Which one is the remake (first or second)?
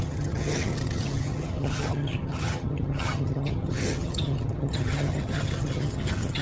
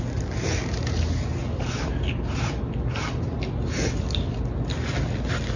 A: first